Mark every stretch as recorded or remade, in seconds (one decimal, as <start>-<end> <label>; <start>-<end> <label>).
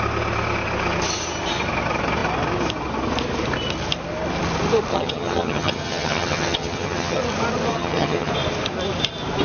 0.0-4.9 recorded; 4.9-7.2 remade; 7.2-7.7 recorded; 7.7-8.3 remade; 8.3-9.4 recorded